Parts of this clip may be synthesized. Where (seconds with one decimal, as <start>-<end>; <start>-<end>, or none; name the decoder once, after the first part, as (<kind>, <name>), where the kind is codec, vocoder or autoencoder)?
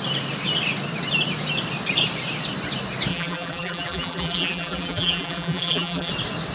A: 3.1-6.1 (vocoder, BigVGAN v2)